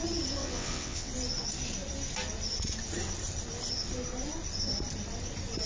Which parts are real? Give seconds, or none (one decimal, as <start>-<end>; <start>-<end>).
0.0-0.4; 1.1-5.7